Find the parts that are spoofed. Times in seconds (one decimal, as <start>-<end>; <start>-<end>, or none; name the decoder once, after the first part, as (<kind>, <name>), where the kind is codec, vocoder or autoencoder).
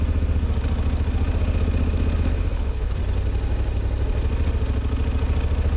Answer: 2.5-3.0 (codec, HILCodec)